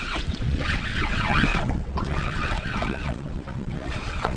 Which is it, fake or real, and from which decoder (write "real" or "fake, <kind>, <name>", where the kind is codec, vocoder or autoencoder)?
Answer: fake, vocoder, WaveNeXt